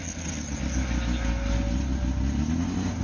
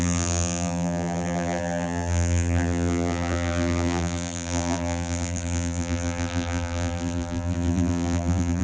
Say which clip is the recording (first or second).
first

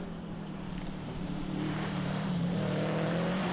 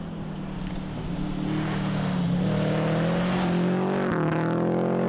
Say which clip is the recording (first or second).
second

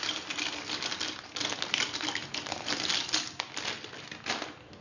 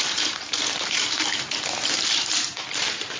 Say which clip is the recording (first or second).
first